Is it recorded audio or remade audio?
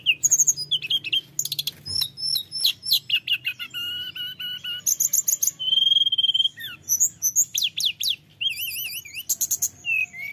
recorded